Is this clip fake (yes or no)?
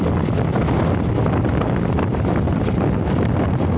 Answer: no